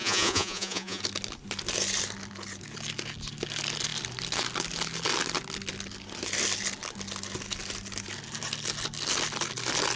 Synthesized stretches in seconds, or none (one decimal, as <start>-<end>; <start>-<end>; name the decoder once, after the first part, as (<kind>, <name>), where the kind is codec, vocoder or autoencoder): 0.0-1.0 (vocoder, Vocos)